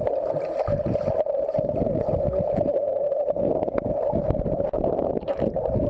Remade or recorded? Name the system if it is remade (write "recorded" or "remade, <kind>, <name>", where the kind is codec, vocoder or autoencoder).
recorded